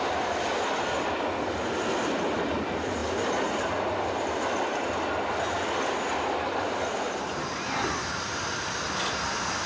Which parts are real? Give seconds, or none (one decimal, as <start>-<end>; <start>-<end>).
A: 0.0-9.7